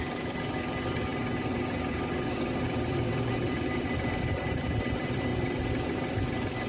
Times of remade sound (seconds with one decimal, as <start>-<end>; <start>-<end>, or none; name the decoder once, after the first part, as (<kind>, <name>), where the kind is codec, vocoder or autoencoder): 0.0-5.3 (vocoder, BigVGAN v2)